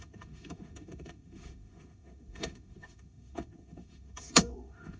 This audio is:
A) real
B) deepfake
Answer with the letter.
B